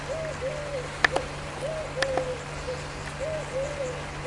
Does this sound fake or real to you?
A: real